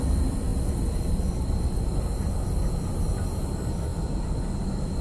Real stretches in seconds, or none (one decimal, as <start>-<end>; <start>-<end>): 0.0-5.0